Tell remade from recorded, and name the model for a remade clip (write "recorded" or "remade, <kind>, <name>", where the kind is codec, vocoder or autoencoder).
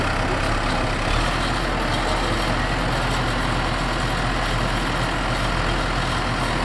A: recorded